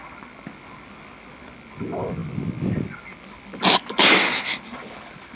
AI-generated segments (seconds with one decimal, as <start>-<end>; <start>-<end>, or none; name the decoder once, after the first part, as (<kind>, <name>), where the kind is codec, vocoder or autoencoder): none